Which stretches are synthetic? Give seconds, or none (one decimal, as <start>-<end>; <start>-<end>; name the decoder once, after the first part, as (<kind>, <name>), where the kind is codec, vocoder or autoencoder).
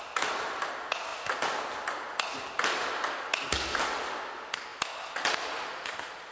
none